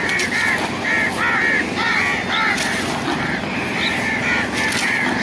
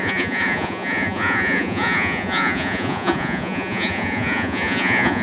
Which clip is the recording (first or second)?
first